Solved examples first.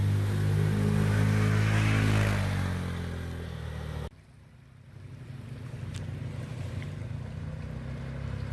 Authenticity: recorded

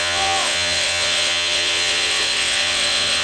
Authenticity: remade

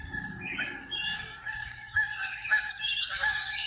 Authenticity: remade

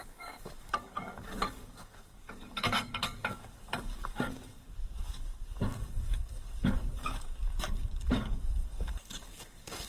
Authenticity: remade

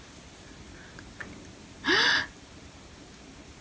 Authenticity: recorded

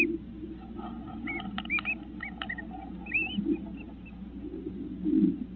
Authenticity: recorded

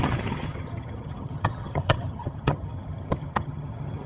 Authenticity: remade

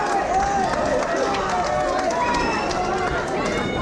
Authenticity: recorded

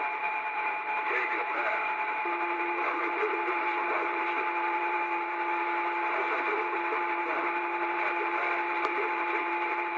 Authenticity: remade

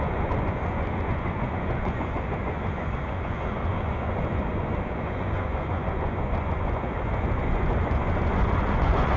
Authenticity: remade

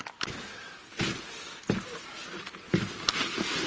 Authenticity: recorded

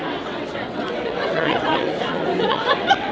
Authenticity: remade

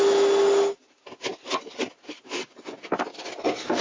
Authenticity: recorded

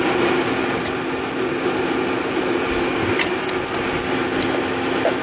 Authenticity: recorded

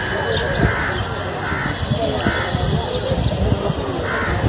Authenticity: recorded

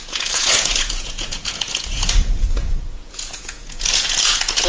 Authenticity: remade